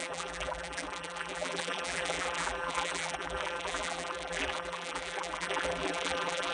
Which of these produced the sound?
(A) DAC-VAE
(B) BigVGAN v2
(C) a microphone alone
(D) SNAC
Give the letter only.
B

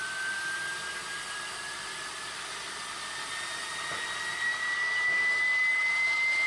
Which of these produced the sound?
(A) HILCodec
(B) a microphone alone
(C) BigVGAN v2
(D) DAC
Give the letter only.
B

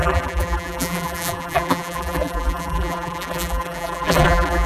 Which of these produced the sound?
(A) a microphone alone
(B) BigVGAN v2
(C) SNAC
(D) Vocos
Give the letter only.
B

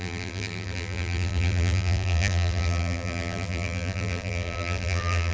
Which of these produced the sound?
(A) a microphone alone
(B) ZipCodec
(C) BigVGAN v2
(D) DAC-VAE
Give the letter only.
C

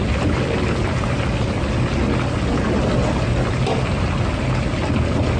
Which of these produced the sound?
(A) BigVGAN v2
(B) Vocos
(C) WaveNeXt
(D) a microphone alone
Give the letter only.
D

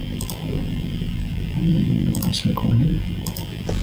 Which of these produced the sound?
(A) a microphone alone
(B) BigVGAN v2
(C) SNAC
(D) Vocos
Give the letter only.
B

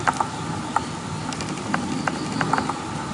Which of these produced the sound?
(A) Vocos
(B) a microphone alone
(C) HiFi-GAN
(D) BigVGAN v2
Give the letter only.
D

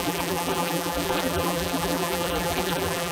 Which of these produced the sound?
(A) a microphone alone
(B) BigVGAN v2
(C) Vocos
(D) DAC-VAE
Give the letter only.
B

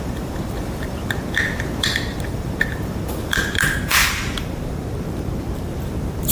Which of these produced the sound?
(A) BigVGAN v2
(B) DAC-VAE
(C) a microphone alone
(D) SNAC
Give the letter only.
A